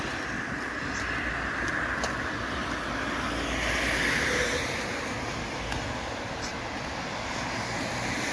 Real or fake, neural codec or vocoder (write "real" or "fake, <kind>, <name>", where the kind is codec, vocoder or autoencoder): real